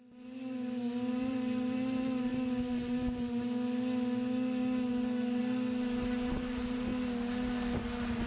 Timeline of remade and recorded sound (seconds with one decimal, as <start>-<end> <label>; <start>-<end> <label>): 0.0-2.3 remade; 2.3-4.9 recorded; 4.9-5.4 remade; 5.4-6.3 recorded; 6.3-6.9 remade; 6.9-8.3 recorded